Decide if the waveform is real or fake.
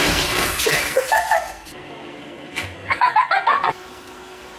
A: fake